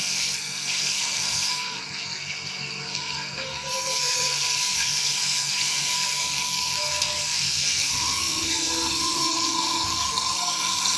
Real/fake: fake